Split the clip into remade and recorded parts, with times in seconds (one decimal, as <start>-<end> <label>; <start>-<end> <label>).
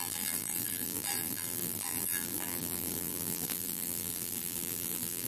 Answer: 0.0-5.3 remade